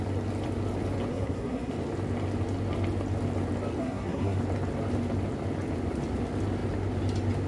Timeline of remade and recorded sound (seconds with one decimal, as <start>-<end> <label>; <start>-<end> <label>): 0.0-1.1 recorded; 1.1-1.7 remade; 1.7-3.8 recorded; 3.8-4.4 remade; 4.4-7.5 recorded